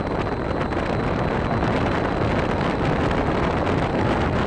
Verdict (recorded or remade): recorded